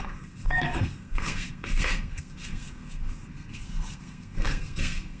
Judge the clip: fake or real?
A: fake